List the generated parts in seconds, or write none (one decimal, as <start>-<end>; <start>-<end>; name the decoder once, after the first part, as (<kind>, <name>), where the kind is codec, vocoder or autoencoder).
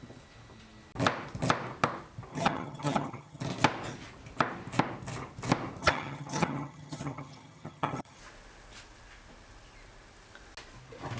2.3-3.4 (vocoder, HiFi-GAN); 5.8-8.2